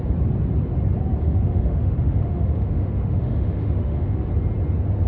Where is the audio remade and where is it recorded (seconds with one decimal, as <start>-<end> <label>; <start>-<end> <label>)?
0.0-1.2 recorded; 1.2-4.3 remade; 4.3-5.1 recorded